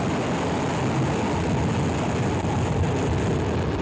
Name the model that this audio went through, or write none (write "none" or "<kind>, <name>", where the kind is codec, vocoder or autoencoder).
none